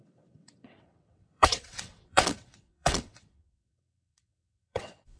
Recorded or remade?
remade